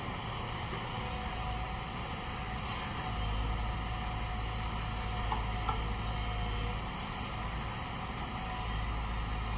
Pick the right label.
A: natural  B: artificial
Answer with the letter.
A